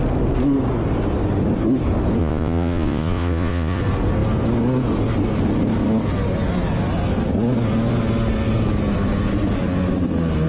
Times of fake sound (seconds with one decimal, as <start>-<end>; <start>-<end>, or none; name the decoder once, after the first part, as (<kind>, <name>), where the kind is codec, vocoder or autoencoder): 2.2-3.8 (vocoder, Vocos)